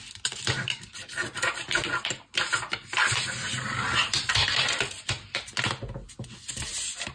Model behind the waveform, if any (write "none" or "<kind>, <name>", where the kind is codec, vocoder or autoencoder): none